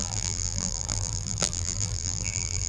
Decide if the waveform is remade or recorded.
remade